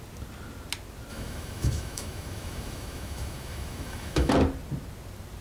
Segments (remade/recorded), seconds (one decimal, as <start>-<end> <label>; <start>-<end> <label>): 0.0-1.1 recorded; 1.1-4.3 remade; 4.3-5.4 recorded